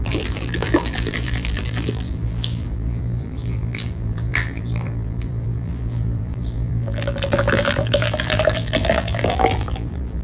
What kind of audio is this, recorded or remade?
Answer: remade